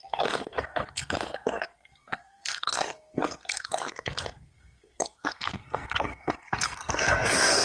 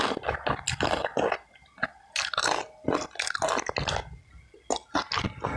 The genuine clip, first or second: second